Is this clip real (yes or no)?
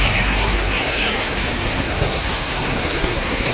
no